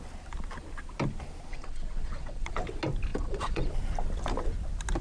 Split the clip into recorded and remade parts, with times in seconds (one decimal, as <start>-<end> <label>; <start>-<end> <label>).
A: 0.0-1.5 recorded; 1.5-2.5 remade; 2.5-3.1 recorded; 3.1-3.7 remade; 3.7-5.0 recorded